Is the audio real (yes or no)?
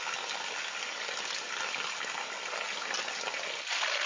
yes